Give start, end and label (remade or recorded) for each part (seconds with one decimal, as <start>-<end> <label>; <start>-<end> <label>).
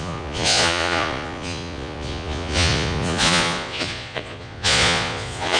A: 0.0-5.6 remade